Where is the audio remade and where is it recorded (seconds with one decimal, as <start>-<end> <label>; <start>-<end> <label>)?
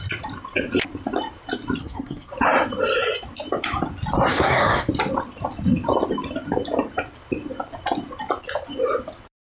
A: 0.0-1.8 recorded; 1.8-2.3 remade; 2.3-4.3 recorded; 4.3-4.9 remade; 4.9-9.4 recorded